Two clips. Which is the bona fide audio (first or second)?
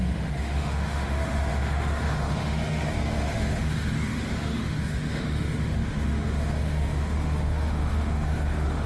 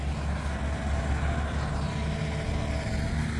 second